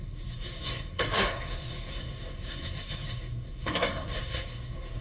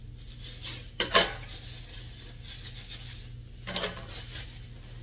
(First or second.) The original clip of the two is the second